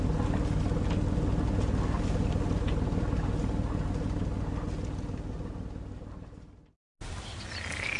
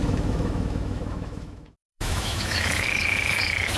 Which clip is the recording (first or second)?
first